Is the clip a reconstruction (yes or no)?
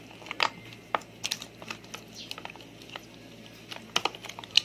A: no